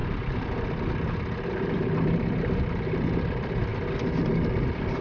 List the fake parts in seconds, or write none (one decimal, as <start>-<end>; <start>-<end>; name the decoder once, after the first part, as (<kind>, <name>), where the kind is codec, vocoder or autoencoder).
none